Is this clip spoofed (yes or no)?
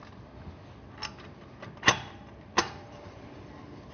no